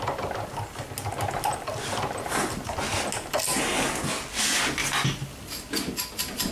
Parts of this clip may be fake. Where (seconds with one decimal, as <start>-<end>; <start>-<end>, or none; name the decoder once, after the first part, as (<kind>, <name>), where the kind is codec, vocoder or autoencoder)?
none